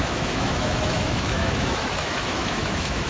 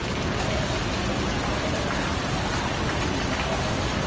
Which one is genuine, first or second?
second